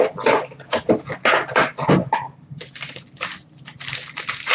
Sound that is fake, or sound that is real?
real